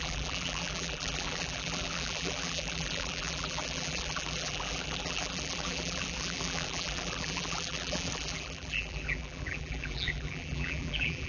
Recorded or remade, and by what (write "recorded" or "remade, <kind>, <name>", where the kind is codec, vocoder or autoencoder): remade, vocoder, BigVGAN v2